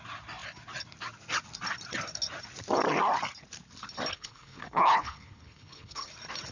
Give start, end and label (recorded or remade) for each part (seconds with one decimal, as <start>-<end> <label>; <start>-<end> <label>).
0.0-4.1 recorded; 4.1-6.1 remade; 6.1-6.5 recorded